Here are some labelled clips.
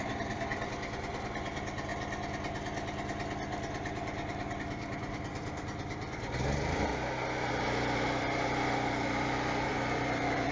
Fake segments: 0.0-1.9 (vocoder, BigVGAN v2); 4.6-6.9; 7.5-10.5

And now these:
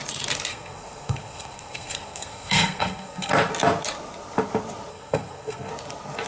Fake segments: 0.5-3.3 (codec, SNAC); 4.9-5.7

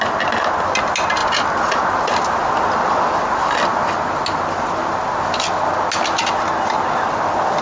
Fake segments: none

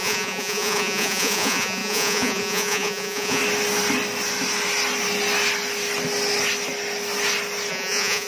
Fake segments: 0.0-3.4 (vocoder, Vocos); 7.7-8.3